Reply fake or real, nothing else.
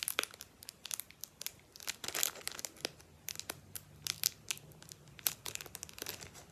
real